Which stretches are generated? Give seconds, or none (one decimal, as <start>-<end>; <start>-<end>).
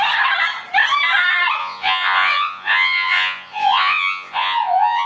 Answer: 1.6-5.1